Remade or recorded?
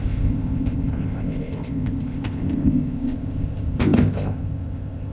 remade